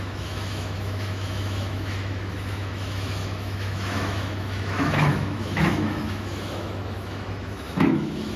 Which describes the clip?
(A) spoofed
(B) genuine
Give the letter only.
A